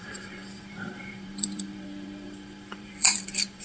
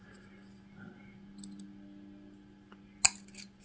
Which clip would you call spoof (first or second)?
first